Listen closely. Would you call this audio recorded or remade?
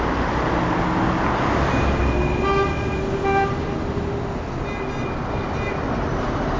recorded